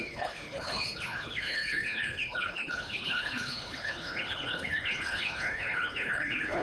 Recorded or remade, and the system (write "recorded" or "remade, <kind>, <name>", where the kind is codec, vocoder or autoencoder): remade, codec, HILCodec